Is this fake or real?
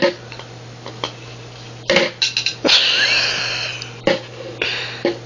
real